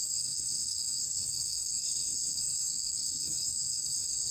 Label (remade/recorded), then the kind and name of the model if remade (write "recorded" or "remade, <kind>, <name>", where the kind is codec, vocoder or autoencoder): remade, codec, SNAC